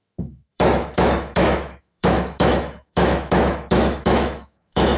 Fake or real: fake